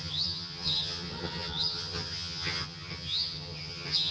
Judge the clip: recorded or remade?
remade